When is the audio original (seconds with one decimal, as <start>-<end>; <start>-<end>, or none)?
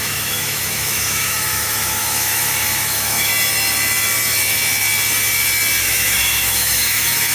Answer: 3.3-5.8